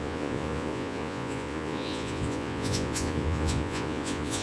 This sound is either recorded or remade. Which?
remade